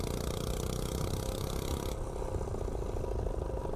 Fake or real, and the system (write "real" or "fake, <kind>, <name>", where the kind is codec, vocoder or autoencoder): real